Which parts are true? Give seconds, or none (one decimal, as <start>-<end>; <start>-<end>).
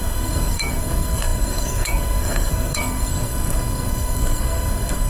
none